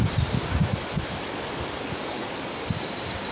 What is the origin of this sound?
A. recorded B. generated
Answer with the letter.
A